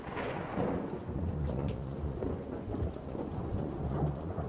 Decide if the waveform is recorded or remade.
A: remade